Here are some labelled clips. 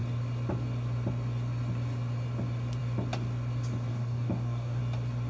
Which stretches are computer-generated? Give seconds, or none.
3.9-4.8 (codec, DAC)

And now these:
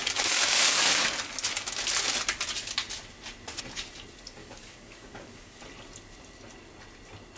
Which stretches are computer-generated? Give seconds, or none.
0.0-1.0 (codec, DAC); 4.4-5.6